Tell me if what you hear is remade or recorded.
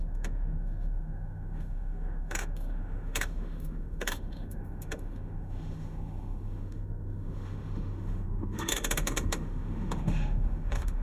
remade